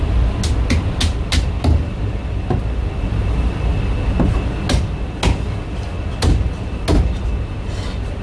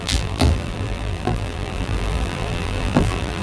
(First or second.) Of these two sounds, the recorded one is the first